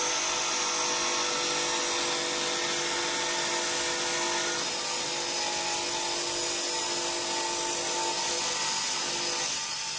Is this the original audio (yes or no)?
yes